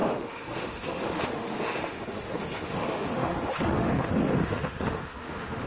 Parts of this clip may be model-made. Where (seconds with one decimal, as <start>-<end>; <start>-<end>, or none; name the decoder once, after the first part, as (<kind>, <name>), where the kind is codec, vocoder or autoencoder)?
0.0-5.7 (autoencoder, DAC-VAE)